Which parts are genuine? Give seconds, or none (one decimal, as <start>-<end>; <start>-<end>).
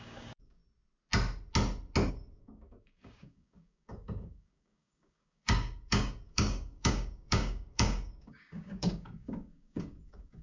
0.6-2.1